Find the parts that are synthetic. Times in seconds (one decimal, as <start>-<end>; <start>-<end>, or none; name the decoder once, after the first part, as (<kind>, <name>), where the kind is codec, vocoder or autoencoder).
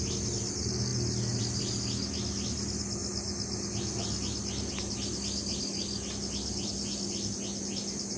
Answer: none